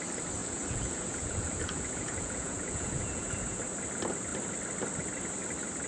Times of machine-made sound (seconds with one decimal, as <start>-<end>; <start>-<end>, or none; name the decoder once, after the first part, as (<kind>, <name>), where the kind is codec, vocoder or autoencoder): 0.4-3.6 (vocoder, Vocos)